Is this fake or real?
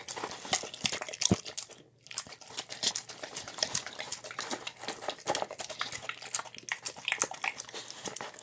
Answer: real